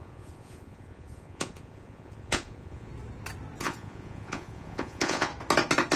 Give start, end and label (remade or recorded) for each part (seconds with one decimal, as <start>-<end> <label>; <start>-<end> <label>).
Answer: 0.0-2.9 remade; 2.9-3.6 recorded; 3.6-5.3 remade; 5.3-6.0 recorded